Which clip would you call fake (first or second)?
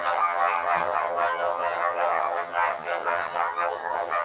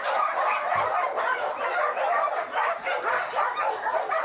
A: first